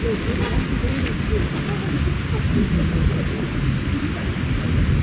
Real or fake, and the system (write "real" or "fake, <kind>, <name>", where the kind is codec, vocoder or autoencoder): real